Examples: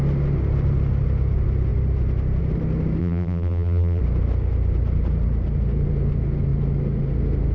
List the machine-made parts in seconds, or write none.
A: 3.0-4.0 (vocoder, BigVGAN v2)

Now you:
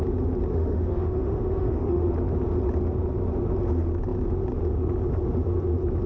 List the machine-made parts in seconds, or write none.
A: 0.5-2.1 (autoencoder, DAC-VAE)